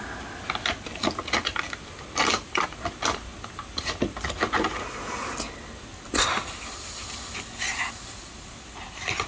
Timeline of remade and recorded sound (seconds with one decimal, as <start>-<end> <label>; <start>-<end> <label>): 0.0-9.3 recorded